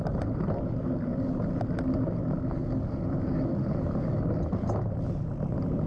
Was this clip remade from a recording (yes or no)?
no